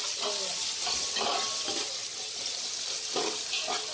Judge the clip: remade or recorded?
recorded